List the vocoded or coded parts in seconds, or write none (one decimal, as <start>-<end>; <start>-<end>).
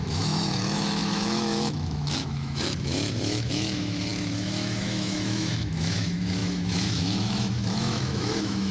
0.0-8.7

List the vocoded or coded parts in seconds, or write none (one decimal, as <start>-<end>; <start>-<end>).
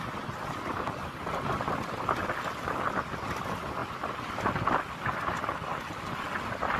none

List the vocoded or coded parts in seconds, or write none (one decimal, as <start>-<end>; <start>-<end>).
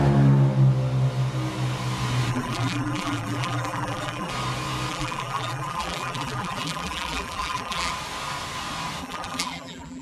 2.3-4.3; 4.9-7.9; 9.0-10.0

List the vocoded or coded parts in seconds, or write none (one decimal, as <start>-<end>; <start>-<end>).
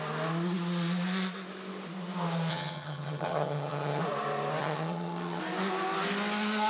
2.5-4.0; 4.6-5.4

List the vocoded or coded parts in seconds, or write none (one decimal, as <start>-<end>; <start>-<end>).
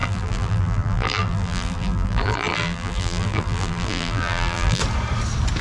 0.0-4.8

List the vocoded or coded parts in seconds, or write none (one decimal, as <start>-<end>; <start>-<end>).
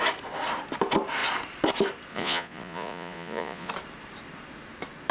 2.1-3.7